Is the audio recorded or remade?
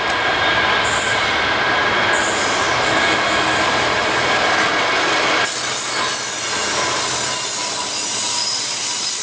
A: recorded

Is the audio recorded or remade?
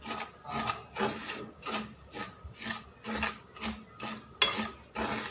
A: recorded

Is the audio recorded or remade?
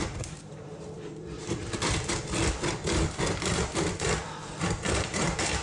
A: remade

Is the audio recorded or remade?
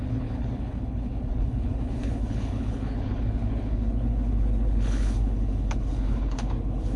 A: remade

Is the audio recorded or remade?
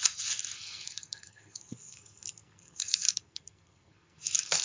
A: remade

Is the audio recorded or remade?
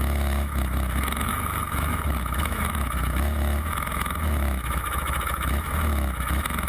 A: remade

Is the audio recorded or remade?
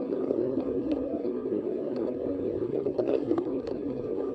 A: remade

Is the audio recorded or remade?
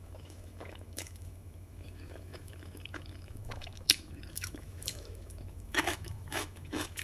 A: remade